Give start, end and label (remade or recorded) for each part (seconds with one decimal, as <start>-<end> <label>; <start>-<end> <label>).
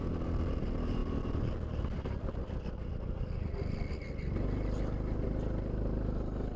0.0-6.6 recorded